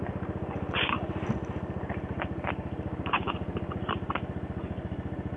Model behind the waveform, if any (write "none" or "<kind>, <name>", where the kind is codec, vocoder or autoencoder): none